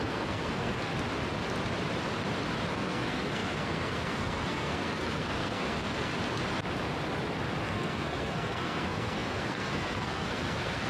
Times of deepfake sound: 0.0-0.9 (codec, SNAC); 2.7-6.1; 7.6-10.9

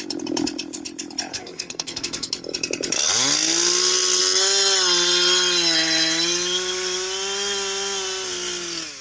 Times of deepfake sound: 1.3-2.3 (codec, SNAC)

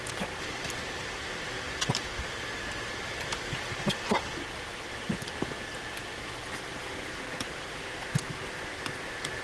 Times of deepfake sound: none

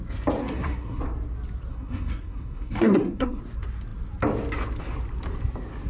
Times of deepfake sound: 0.4-1.0 (codec, SNAC); 1.7-3.4